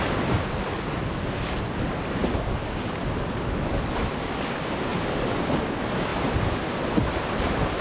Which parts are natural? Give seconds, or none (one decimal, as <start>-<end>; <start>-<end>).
0.0-7.8